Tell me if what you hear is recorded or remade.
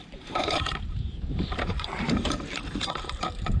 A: remade